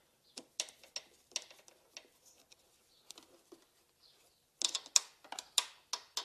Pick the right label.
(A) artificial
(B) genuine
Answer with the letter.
B